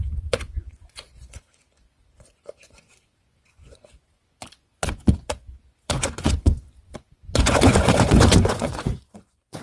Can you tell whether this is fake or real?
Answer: fake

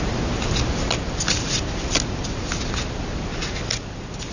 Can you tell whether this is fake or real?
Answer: real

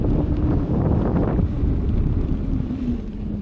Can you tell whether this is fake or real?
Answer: real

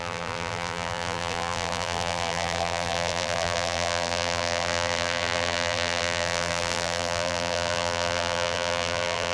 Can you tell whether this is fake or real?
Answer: fake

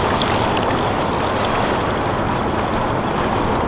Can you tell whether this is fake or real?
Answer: real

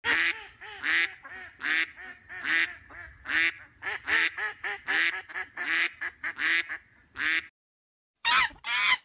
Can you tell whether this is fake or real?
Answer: real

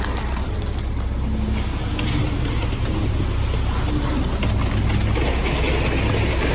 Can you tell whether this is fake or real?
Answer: real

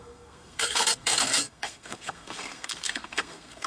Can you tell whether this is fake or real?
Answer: fake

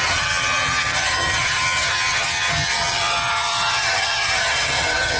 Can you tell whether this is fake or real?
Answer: fake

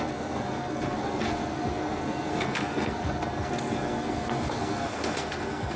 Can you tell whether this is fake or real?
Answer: fake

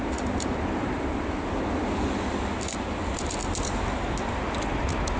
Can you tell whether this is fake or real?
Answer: real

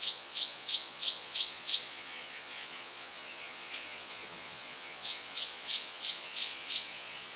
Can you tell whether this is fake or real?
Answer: fake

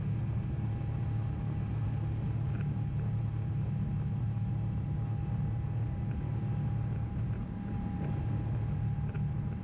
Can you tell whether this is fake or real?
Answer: real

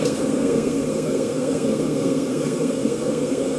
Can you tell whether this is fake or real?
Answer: fake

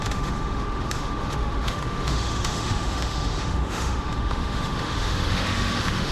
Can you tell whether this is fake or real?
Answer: fake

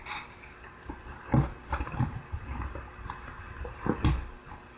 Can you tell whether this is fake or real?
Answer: real